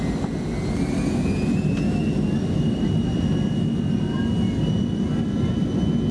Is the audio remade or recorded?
recorded